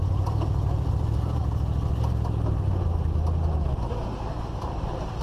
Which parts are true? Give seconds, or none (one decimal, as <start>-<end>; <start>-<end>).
1.4-4.5

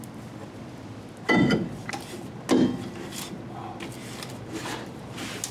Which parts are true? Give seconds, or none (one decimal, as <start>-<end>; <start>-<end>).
0.0-5.5

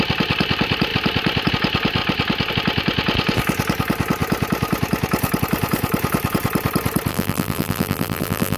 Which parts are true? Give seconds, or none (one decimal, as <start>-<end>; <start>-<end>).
0.0-7.1